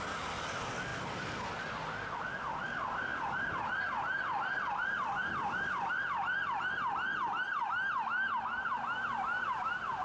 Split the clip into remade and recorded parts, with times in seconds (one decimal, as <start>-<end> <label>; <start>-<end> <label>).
0.0-10.0 recorded